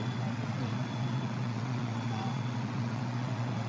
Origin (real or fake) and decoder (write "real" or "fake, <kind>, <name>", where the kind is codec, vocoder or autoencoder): fake, vocoder, WaveNeXt